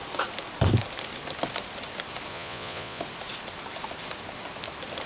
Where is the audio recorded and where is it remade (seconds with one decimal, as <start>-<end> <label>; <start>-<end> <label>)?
0.0-2.3 recorded; 2.3-3.0 remade; 3.0-5.1 recorded